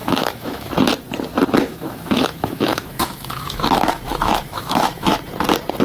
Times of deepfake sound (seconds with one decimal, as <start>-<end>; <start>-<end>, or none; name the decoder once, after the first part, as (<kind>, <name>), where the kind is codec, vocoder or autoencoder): 0.0-0.7 (autoencoder, DAC-VAE); 1.6-5.1